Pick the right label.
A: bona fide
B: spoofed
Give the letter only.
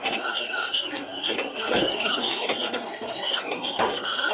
B